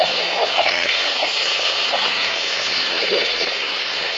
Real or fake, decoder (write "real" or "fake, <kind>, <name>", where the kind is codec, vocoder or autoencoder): fake, codec, SNAC